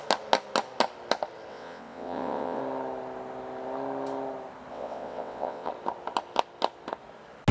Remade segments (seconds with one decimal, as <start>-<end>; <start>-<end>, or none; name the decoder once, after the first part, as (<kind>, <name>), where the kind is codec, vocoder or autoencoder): 1.5-2.6 (vocoder, WaveNeXt); 4.7-5.7